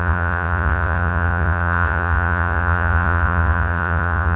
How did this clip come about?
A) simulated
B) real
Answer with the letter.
A